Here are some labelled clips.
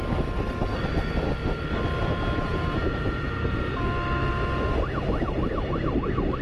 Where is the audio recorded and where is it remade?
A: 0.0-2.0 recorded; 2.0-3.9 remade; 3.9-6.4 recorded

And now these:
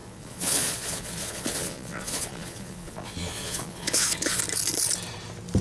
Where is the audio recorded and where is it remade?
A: 0.0-4.4 remade; 4.4-5.6 recorded

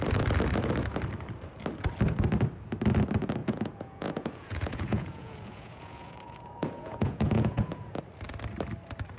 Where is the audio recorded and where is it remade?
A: 0.0-3.4 recorded; 3.4-8.0 remade; 8.0-9.2 recorded

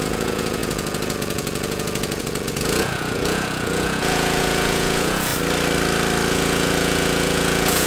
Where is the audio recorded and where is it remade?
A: 0.0-5.3 remade; 5.3-6.3 recorded; 6.3-7.9 remade